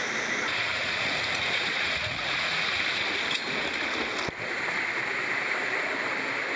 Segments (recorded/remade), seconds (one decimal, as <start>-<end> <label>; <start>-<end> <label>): 0.0-0.7 recorded; 0.7-3.0 remade; 3.0-6.6 recorded